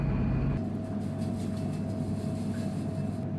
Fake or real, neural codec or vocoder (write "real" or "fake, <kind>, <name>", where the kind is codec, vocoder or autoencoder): real